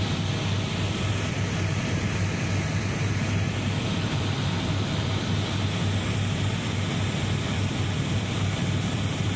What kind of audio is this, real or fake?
fake